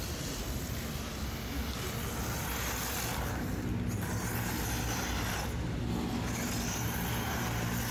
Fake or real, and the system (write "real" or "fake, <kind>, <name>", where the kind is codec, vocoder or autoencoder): real